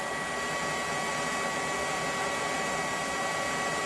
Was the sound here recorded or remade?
recorded